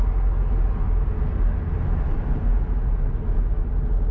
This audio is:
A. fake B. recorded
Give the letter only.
B